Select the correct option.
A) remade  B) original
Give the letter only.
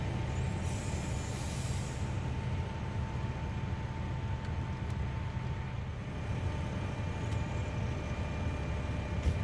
B